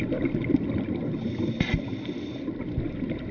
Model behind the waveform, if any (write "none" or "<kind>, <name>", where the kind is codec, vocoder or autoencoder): none